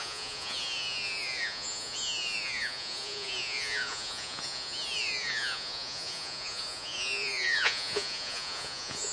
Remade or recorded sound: remade